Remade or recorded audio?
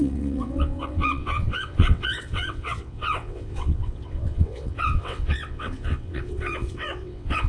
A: remade